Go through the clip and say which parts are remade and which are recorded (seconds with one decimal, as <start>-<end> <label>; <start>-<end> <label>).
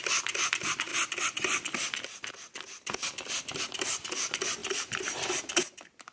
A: 0.0-4.6 recorded; 4.6-5.4 remade; 5.4-6.1 recorded